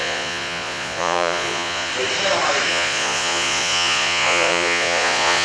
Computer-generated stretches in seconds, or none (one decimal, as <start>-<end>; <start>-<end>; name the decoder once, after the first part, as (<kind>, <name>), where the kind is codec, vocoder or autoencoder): 0.0-1.9 (vocoder, Vocos); 2.7-5.4